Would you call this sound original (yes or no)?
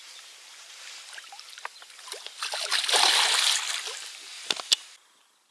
yes